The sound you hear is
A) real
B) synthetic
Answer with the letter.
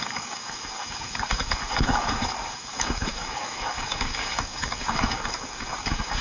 B